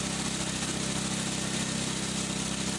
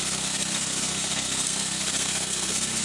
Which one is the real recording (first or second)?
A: first